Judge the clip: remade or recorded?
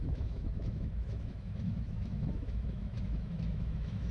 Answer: remade